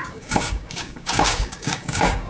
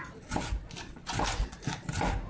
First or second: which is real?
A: second